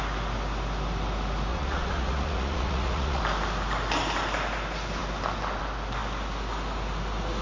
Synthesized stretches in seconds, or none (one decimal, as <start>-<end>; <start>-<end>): 1.5-3.2